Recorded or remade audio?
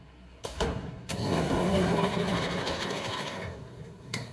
remade